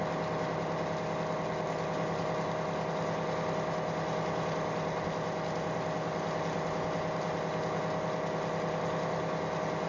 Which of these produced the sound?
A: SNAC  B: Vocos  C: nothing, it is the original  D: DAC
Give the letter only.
C